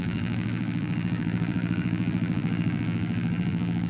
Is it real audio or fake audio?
fake